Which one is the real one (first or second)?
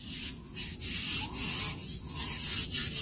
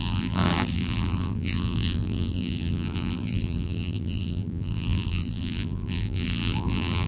first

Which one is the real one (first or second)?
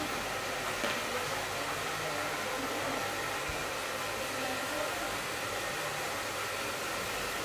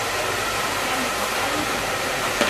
first